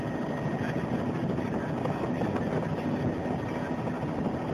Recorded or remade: recorded